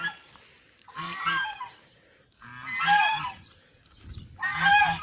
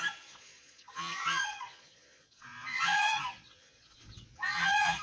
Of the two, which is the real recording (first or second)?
first